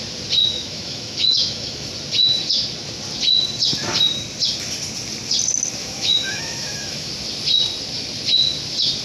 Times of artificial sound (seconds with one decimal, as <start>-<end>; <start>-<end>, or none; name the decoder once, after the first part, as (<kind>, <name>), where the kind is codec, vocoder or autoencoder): 0.5-1.9 (autoencoder, DAC-VAE); 5.8-7.1

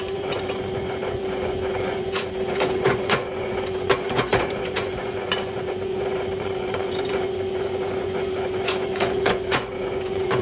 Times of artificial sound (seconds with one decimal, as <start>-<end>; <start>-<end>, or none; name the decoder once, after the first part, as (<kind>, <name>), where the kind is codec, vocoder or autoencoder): 0.0-10.4 (vocoder, Vocos)

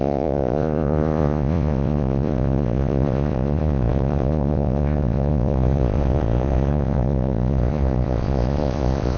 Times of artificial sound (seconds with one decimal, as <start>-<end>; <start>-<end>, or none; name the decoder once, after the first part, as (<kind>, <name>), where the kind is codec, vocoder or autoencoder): 0.0-9.2 (vocoder, Vocos)

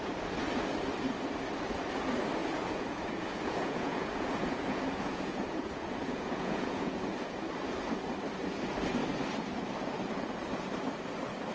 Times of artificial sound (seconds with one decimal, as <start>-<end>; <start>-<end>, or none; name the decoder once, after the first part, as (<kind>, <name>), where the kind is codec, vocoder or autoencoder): 2.4-7.4 (vocoder, Vocos)

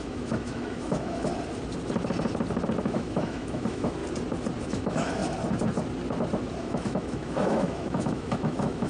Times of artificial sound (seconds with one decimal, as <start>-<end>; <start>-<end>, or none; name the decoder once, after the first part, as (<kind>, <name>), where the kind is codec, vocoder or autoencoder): 0.0-1.3 (autoencoder, DAC-VAE); 2.8-4.0; 4.6-5.2; 6.6-8.9

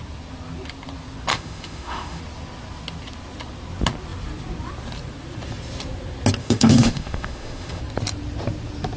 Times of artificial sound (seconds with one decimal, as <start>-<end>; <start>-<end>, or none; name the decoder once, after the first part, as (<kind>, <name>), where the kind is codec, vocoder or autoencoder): 1.3-2.2 (autoencoder, DAC-VAE); 6.4-7.8